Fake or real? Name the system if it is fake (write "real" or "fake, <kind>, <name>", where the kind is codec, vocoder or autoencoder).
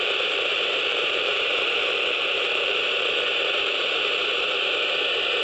fake, vocoder, BigVGAN v2